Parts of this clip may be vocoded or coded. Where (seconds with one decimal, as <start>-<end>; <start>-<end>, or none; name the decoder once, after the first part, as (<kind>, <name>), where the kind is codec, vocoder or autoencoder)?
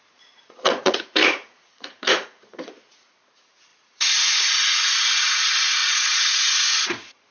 0.0-7.3 (vocoder, Vocos)